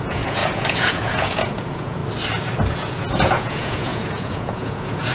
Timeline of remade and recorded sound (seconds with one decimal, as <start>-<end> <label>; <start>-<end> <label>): 0.0-2.0 remade; 2.0-2.7 recorded; 2.7-5.1 remade